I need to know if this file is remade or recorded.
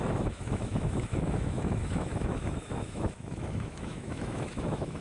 remade